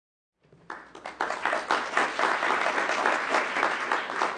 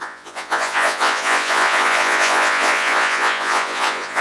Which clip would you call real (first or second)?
first